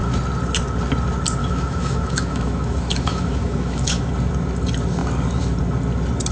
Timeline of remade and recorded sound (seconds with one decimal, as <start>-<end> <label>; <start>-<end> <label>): 0.0-1.4 recorded; 1.4-4.1 remade; 4.1-6.3 recorded